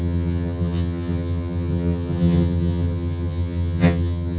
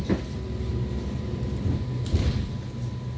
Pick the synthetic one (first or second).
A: first